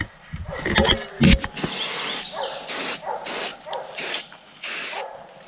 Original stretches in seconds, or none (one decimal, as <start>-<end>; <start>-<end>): 0.0-3.5; 4.7-5.5